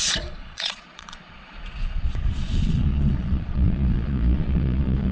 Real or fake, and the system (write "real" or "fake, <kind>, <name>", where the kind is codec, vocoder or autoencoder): fake, vocoder, Vocos